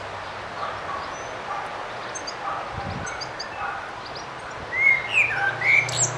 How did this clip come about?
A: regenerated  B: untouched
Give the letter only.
B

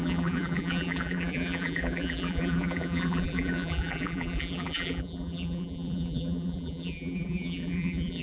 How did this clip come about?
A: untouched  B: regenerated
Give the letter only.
B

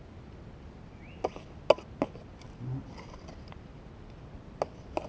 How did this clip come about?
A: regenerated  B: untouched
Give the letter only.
B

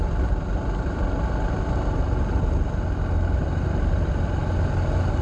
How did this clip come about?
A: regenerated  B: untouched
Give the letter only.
B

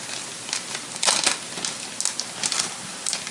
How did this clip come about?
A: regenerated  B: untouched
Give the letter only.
B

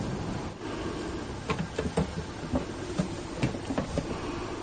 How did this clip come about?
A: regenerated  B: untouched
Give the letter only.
B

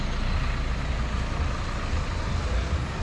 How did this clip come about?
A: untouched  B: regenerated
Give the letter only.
A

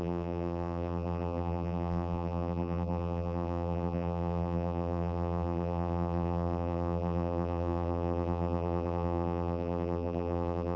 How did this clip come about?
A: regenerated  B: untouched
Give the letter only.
A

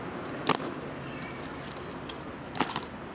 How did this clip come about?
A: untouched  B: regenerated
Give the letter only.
A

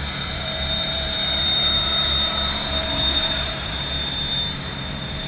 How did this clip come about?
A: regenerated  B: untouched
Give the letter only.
A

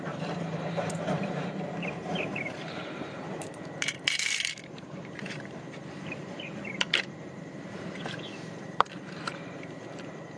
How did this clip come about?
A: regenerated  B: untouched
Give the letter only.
A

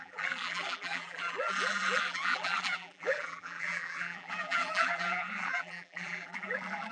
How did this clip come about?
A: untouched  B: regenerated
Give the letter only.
B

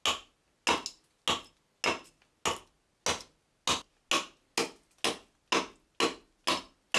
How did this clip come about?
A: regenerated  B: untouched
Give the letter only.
B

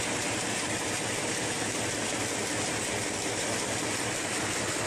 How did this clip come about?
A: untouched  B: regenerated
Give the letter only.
A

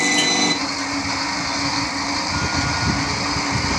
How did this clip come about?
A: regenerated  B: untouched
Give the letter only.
B